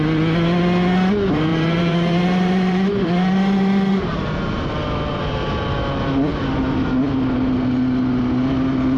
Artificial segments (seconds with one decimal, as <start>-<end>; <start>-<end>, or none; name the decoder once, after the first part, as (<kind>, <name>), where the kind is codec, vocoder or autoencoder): 1.5-4.7 (vocoder, BigVGAN v2)